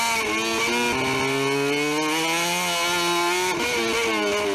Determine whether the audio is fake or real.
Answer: real